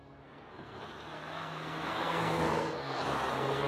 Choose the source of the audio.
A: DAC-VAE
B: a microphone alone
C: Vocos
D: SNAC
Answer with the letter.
D